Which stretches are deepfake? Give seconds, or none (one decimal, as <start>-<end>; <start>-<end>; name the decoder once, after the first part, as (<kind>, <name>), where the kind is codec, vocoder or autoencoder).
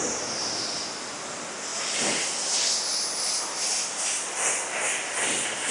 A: none